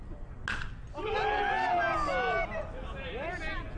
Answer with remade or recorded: recorded